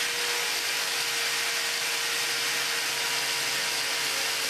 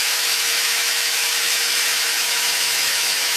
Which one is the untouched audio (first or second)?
first